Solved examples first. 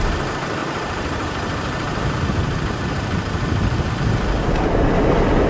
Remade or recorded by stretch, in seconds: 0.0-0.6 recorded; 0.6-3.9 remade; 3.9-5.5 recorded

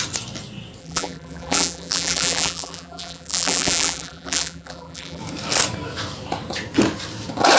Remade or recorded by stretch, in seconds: 0.0-0.8 recorded; 0.8-5.2 remade; 5.2-7.6 recorded

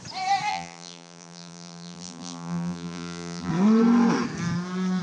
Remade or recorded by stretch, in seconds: 0.0-0.5 recorded; 0.5-3.5 remade; 3.5-5.0 recorded

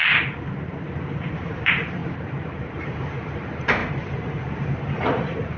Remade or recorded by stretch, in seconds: 0.0-5.6 remade

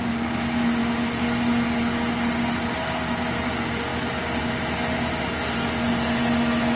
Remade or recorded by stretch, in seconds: 0.0-6.8 recorded

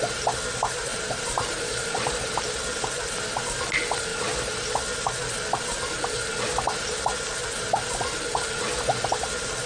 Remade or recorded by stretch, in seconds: 0.0-0.9 recorded; 0.9-2.4 remade; 2.4-4.1 recorded; 4.1-4.6 remade; 4.6-9.7 recorded

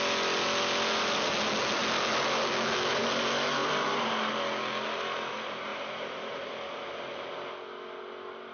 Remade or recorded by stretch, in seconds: 0.0-5.7 recorded; 5.7-6.4 remade; 6.4-8.5 recorded

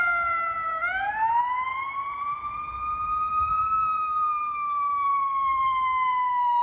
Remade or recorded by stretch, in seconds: 0.0-2.7 remade; 2.7-3.3 recorded; 3.3-6.6 remade